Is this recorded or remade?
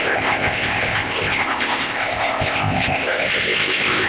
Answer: remade